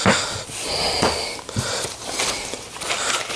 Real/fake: real